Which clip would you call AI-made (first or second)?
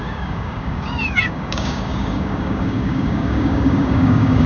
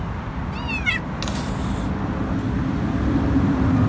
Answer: first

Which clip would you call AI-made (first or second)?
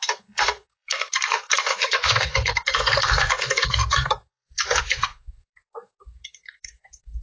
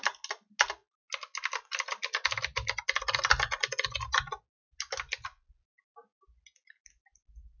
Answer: first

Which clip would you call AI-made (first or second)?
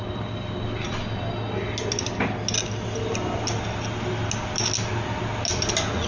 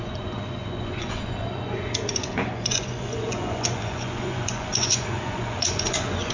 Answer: second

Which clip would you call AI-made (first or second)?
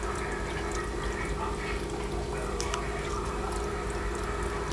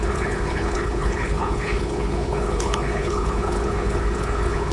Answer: second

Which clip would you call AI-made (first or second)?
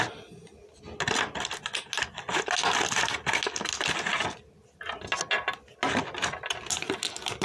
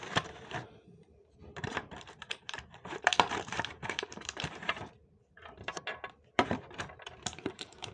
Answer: second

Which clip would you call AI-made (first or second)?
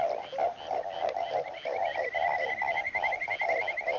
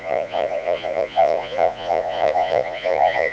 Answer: second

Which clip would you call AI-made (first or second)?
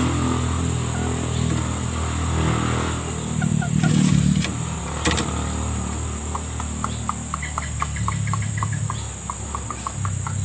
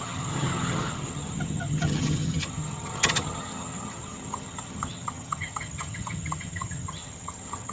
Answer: second